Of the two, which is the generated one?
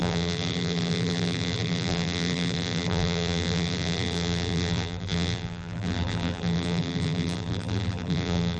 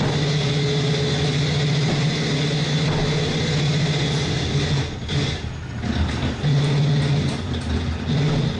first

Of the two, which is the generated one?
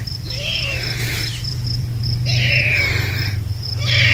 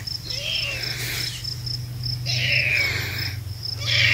first